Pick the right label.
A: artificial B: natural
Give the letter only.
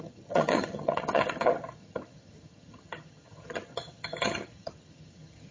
A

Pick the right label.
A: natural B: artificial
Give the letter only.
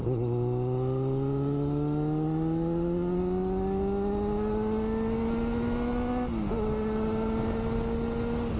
A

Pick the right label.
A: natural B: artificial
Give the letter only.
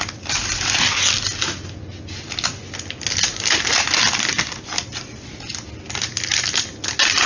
A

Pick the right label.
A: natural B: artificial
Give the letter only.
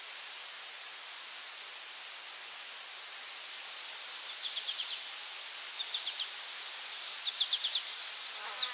A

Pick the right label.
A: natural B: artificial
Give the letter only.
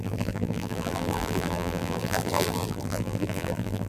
B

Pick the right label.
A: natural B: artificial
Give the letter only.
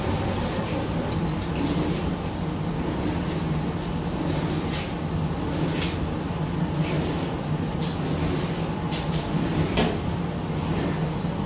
A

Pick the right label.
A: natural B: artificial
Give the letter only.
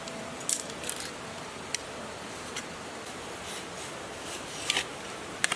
A